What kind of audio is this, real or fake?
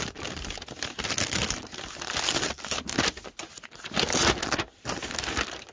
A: real